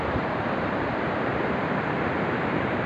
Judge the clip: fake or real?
fake